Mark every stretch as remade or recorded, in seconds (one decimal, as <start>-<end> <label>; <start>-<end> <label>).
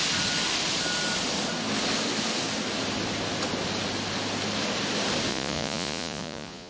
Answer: 0.0-5.3 recorded; 5.3-6.7 remade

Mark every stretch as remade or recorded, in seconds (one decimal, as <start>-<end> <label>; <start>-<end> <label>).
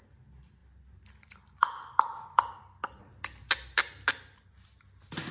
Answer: 0.0-5.3 recorded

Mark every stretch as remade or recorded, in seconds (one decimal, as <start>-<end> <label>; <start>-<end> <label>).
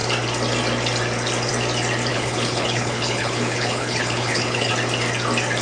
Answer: 0.0-2.1 recorded; 2.1-4.7 remade; 4.7-5.6 recorded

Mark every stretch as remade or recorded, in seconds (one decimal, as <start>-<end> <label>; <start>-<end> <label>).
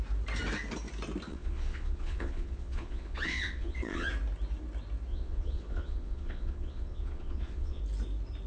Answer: 0.0-1.3 recorded; 1.3-4.1 remade; 4.1-5.1 recorded; 5.1-7.8 remade; 7.8-8.5 recorded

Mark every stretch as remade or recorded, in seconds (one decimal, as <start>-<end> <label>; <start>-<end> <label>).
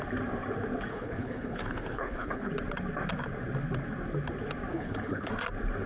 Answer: 0.0-0.9 recorded; 0.9-2.5 remade; 2.5-4.7 recorded; 4.7-5.3 remade; 5.3-5.9 recorded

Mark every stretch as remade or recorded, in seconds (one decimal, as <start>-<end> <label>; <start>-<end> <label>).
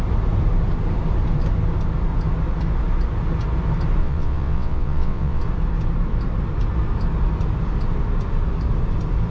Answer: 0.0-4.0 recorded; 4.0-5.4 remade; 5.4-9.3 recorded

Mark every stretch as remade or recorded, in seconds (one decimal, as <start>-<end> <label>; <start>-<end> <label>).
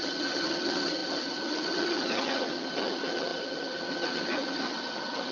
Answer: 0.0-5.3 remade